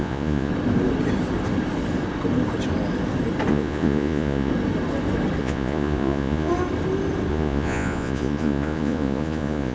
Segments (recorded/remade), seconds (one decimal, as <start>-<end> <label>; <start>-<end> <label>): 0.0-0.5 remade; 0.5-3.5 recorded; 3.5-4.5 remade; 4.5-5.4 recorded; 5.4-6.5 remade; 6.5-7.3 recorded; 7.3-9.7 remade